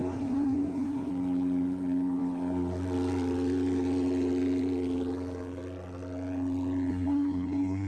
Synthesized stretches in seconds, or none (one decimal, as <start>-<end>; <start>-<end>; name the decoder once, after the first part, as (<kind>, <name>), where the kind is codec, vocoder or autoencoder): 0.0-1.1 (codec, SNAC); 6.9-7.9

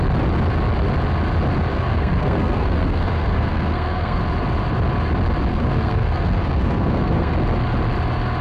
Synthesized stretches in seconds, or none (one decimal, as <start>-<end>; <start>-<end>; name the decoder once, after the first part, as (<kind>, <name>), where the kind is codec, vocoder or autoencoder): 1.7-4.2 (codec, SNAC); 5.5-7.3